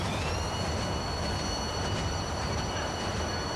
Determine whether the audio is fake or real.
real